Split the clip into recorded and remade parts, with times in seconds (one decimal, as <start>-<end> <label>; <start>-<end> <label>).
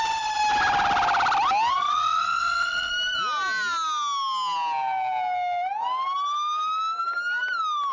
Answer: 0.0-0.4 remade; 0.4-1.7 recorded; 1.7-2.9 remade; 2.9-7.9 recorded